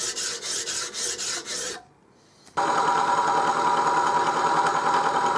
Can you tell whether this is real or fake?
real